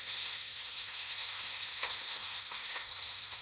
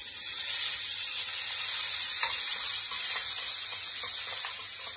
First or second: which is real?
second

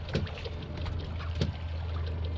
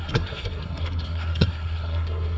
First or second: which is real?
first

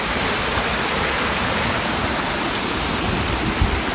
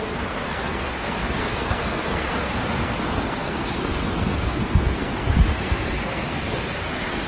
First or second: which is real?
first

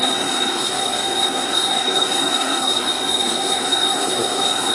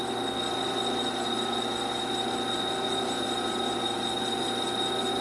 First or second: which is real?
second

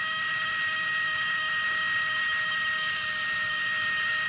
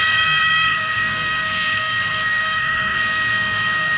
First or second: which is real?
first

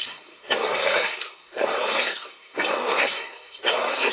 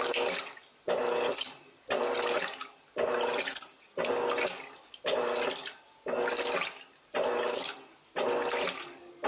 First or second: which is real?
second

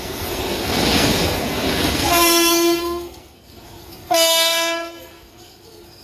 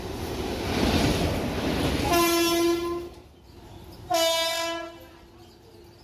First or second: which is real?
second